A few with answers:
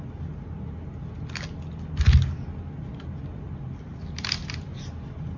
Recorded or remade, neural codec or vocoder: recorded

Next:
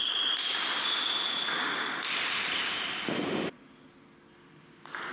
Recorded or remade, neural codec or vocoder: recorded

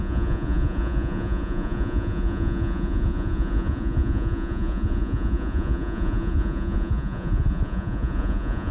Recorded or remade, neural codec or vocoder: remade, vocoder, Vocos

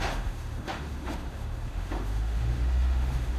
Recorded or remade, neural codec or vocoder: remade, autoencoder, DAC-VAE